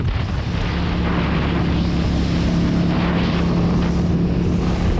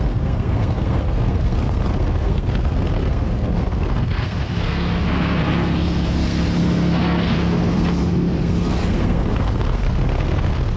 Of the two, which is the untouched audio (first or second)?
first